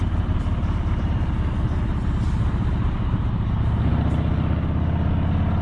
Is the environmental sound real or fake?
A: real